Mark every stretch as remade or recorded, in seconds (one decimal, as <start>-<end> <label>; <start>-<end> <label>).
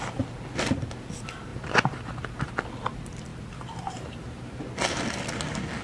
0.0-1.5 recorded; 1.5-2.5 remade; 2.5-3.3 recorded; 3.3-4.6 remade; 4.6-5.8 recorded